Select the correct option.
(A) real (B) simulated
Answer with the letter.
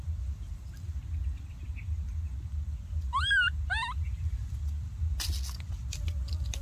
A